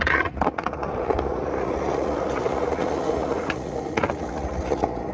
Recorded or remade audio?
remade